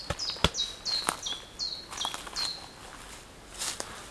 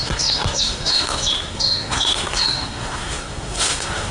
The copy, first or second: second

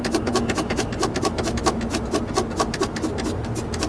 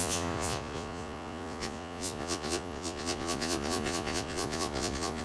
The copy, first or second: second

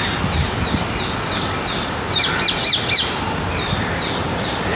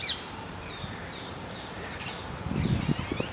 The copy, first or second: second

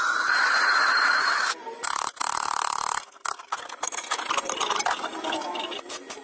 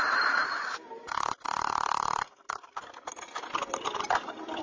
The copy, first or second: second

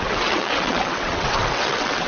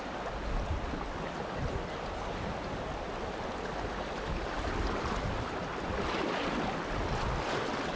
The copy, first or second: first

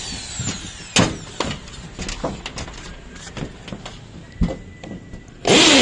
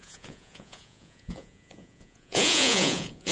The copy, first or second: second